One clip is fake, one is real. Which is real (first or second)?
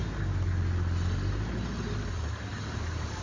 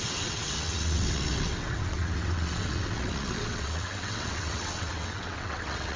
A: first